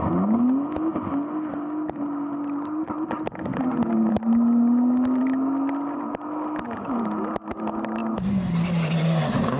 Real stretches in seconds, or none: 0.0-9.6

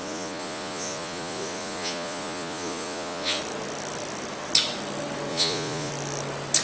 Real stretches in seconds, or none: 3.4-5.3; 5.9-6.6